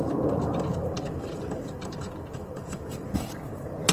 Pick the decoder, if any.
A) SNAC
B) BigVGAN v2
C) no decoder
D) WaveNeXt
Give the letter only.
B